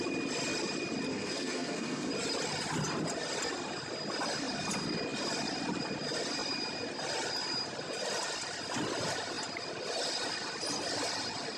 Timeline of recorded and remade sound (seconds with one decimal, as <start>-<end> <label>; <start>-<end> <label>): 0.0-1.1 recorded; 1.1-2.1 remade; 2.1-11.6 recorded